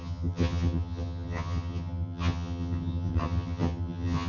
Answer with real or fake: fake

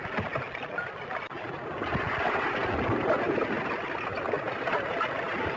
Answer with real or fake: real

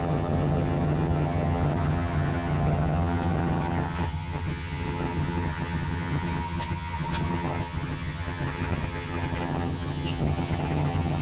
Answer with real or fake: fake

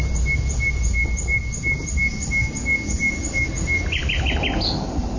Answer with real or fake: real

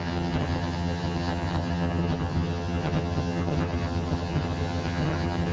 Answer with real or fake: fake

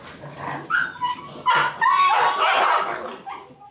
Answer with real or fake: real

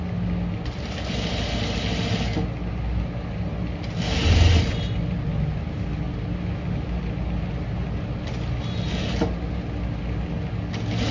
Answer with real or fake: real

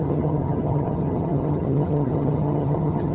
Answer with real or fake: fake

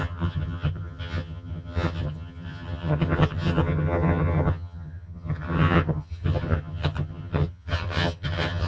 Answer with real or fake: fake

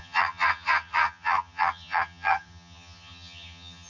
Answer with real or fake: fake